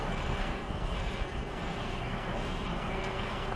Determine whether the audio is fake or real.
fake